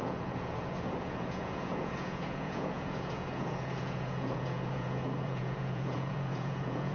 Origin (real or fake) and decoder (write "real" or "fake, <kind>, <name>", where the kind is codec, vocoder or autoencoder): fake, vocoder, Vocos